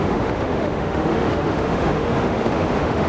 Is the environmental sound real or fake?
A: fake